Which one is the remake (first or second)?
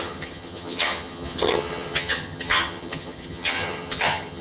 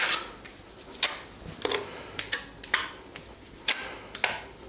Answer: first